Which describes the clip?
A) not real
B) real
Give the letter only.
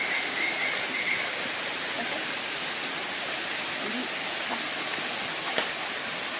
B